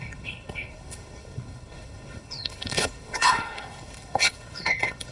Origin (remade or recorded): remade